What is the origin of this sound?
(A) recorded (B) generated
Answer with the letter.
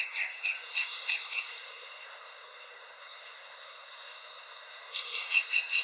B